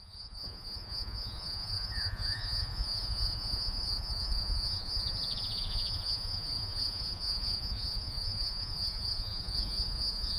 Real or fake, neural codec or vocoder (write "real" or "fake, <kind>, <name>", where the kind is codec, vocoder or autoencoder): fake, vocoder, Vocos